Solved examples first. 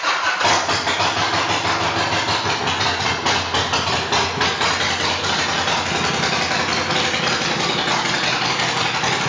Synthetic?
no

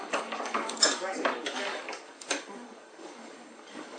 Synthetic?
yes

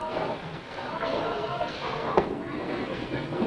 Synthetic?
yes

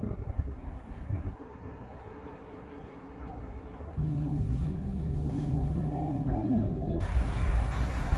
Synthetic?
yes